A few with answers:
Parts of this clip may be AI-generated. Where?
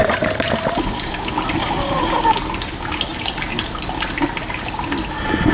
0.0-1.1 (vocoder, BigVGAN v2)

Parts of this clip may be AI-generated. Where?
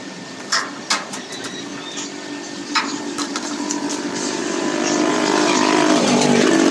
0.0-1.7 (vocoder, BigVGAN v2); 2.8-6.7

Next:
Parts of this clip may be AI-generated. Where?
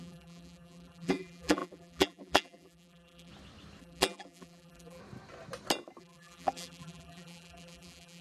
0.0-3.3 (vocoder, BigVGAN v2); 3.8-5.0; 6.0-8.2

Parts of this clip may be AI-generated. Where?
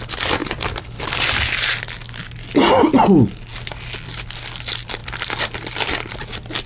0.4-1.0 (vocoder, BigVGAN v2); 5.0-6.1